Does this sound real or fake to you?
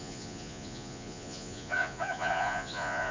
fake